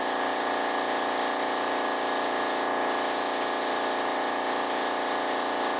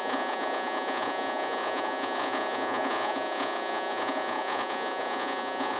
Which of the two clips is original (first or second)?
first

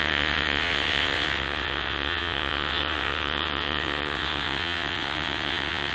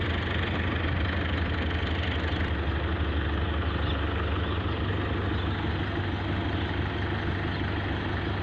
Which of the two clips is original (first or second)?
second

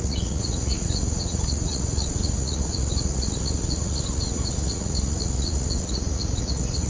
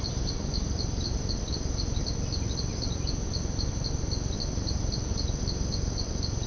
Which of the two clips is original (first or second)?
second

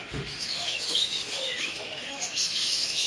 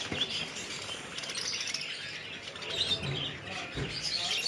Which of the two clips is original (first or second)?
second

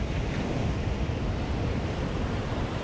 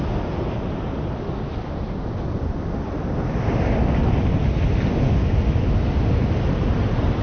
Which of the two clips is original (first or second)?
second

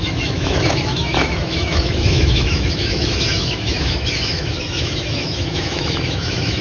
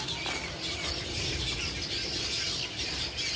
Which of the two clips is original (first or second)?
second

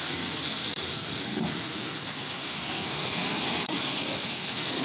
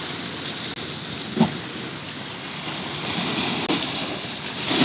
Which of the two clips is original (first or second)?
second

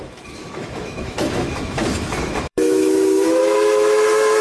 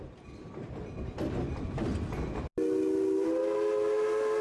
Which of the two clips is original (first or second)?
second